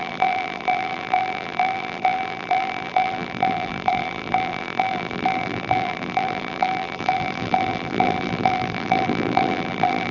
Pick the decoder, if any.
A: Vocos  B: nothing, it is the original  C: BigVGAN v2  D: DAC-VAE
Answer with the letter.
C